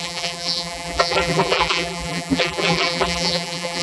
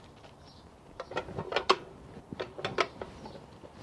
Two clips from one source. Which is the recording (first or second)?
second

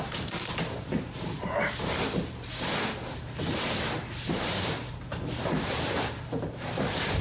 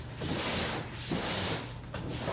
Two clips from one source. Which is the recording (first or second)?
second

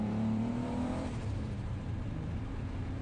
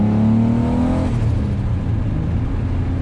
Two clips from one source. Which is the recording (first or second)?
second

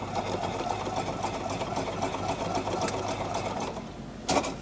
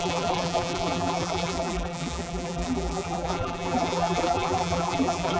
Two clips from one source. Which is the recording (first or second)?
first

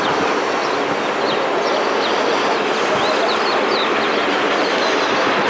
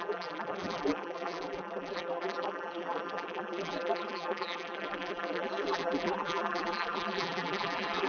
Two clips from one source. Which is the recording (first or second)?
first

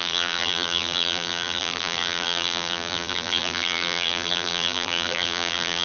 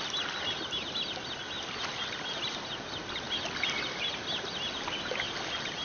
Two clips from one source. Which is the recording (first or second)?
second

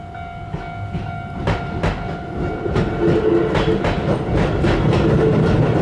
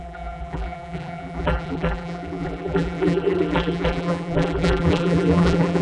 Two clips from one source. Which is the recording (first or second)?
first